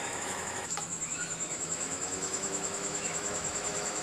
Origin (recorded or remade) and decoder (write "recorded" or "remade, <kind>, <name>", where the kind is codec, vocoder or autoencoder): remade, autoencoder, DAC-VAE